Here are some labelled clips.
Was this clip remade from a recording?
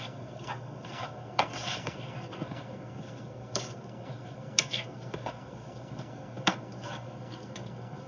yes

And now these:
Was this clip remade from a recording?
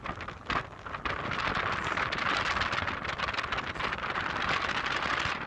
no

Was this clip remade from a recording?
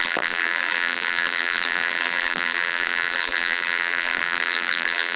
yes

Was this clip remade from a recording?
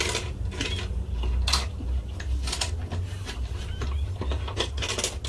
no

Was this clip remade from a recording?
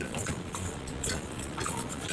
yes